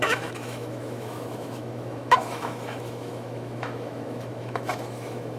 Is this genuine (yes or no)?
no